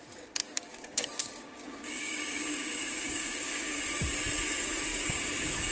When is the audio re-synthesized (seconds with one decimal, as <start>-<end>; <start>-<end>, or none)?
0.4-3.8; 4.9-5.7